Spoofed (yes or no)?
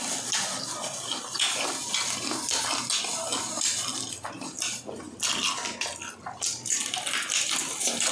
no